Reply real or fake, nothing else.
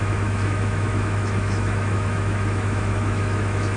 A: fake